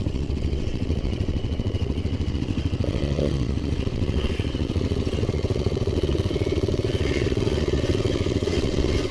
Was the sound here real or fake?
fake